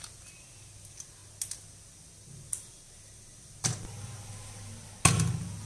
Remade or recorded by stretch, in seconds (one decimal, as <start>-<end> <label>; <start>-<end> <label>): 0.0-5.7 recorded